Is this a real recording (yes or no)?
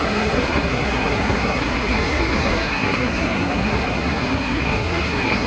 no